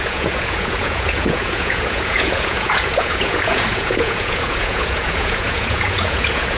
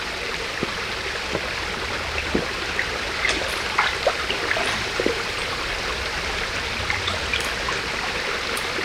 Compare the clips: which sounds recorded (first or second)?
second